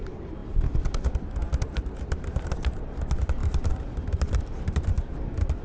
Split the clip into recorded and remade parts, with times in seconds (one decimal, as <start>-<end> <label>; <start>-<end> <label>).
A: 0.0-5.6 recorded